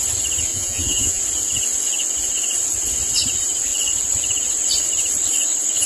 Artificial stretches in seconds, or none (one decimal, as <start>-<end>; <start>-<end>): 0.5-1.2

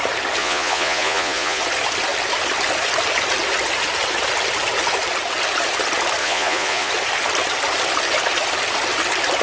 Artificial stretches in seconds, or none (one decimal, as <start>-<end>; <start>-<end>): 0.4-1.6; 6.2-6.9

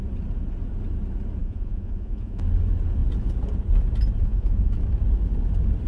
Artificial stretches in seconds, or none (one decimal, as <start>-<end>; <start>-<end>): 1.4-2.4; 4.2-4.7